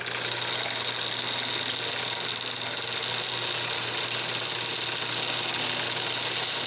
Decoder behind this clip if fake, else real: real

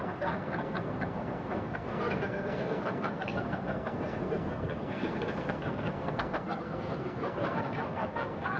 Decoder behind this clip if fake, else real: fake, codec, SNAC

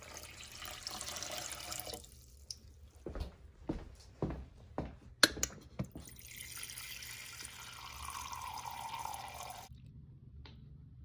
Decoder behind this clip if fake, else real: real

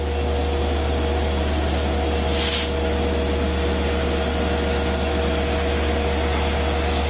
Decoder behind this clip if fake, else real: real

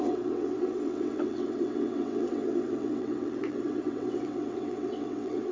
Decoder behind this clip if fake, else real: fake, vocoder, WaveNeXt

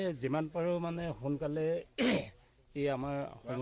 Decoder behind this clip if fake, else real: real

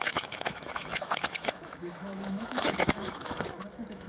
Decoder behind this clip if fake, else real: fake, autoencoder, DAC-VAE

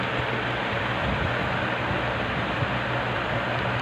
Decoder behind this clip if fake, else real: fake, vocoder, BigVGAN v2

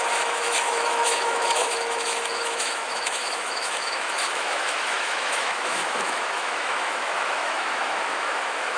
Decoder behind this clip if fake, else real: fake, autoencoder, DAC-VAE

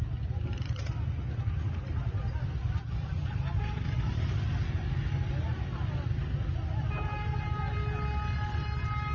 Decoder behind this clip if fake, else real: real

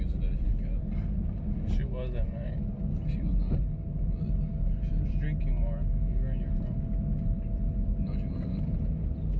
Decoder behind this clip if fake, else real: real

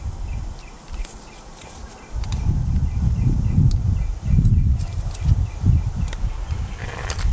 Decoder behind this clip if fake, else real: real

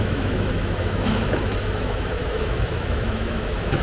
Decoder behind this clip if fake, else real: fake, autoencoder, DAC-VAE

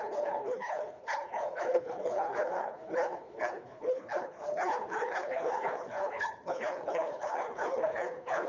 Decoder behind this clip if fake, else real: fake, codec, HILCodec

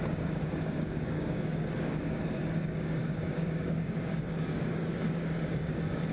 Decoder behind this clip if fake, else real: fake, codec, DAC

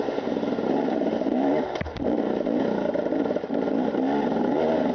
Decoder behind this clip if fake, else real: fake, vocoder, BigVGAN v2